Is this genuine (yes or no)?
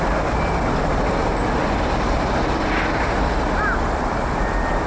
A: yes